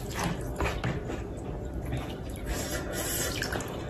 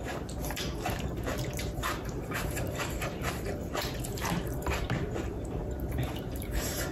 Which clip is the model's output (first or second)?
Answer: second